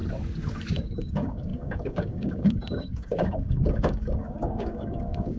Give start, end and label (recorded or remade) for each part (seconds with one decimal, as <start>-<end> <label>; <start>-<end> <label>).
0.0-0.8 recorded; 0.8-5.4 remade